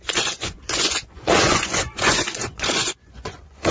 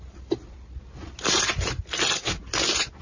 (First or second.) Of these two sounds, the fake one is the first